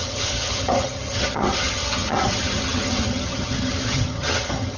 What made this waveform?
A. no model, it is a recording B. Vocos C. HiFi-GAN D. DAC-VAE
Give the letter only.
C